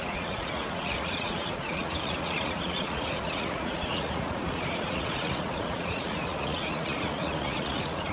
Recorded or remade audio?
remade